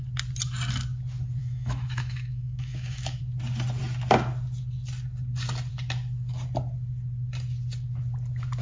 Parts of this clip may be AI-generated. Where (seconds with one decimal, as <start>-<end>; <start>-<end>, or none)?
1.4-3.2